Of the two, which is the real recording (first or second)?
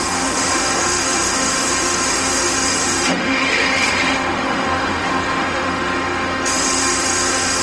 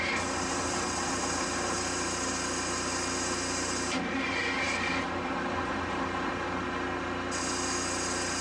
second